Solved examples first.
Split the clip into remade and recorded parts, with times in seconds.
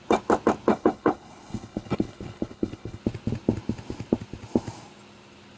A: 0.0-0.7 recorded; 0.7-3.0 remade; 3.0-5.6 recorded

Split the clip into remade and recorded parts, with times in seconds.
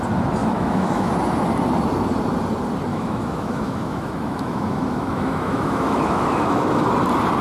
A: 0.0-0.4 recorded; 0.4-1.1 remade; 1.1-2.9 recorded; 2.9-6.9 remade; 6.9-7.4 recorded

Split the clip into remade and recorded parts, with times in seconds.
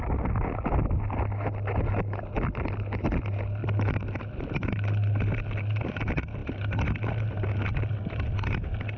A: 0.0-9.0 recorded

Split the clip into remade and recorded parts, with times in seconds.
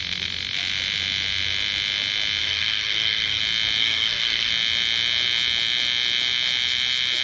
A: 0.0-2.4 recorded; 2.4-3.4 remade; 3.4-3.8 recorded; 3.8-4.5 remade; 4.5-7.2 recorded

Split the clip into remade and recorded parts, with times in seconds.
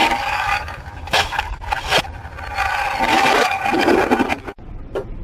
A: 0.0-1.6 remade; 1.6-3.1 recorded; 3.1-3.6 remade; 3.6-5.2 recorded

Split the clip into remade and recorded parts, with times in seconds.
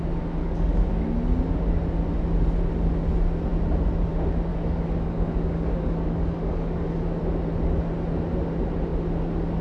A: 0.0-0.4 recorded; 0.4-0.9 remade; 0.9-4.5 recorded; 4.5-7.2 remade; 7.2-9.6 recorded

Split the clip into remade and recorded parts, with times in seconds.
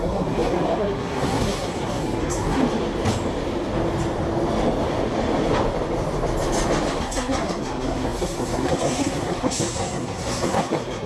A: 0.0-2.6 remade; 2.6-7.0 recorded; 7.0-11.1 remade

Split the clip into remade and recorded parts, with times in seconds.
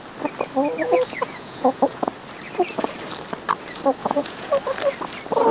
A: 0.0-0.8 recorded; 0.8-2.1 remade; 2.1-4.0 recorded; 4.0-4.5 remade; 4.5-5.5 recorded